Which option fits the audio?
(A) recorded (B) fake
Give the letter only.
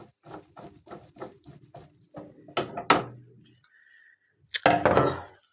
A